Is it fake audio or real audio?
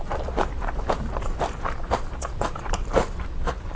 fake